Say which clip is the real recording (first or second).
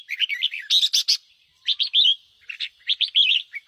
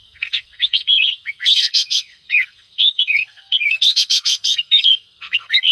first